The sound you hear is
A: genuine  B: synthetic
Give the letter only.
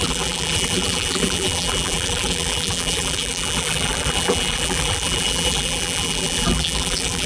B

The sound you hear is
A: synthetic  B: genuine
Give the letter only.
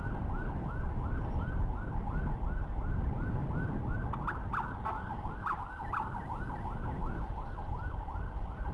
B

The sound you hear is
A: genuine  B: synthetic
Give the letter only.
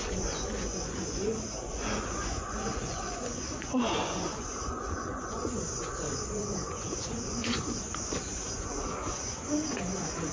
B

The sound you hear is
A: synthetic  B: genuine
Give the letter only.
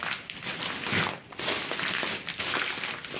B